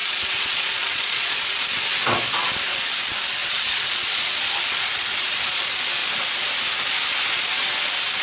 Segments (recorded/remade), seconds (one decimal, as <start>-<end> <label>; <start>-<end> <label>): 0.0-1.6 remade; 1.6-3.4 recorded; 3.4-5.6 remade; 5.6-8.2 recorded